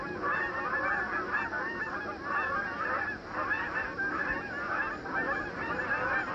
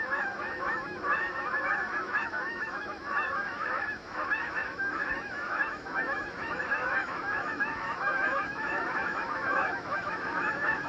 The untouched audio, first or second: first